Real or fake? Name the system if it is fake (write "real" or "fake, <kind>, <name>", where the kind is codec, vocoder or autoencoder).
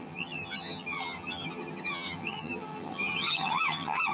fake, vocoder, HiFi-GAN